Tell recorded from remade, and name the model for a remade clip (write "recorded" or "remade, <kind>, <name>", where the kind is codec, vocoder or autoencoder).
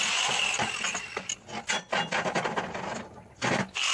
recorded